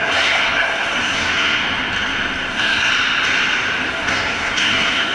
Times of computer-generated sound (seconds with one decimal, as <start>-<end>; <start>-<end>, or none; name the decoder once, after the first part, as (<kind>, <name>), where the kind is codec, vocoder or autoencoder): 0.0-1.6 (codec, SNAC); 2.5-2.9; 3.9-5.1